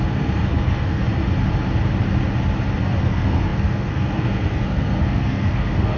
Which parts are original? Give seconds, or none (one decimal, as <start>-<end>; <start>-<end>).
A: 1.0-3.0